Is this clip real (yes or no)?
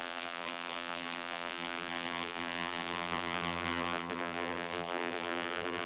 no